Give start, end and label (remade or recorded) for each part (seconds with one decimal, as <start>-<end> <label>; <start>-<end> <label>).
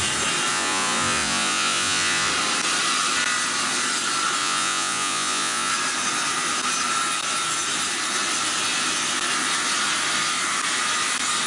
0.0-0.5 recorded; 0.5-2.3 remade; 2.3-4.4 recorded; 4.4-5.7 remade; 5.7-11.5 recorded